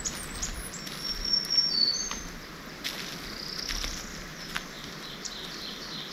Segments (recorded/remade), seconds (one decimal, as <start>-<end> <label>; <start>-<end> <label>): 0.0-4.3 recorded; 4.3-5.3 remade; 5.3-6.1 recorded